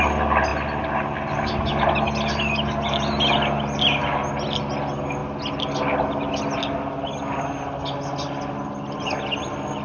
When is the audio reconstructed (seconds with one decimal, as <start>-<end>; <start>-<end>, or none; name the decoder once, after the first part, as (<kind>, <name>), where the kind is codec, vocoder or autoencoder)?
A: none